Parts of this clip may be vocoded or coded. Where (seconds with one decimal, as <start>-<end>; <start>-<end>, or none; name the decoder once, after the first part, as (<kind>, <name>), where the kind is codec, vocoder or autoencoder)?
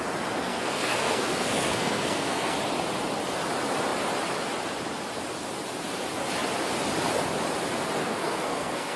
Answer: 0.4-2.6 (codec, SNAC); 8.0-9.0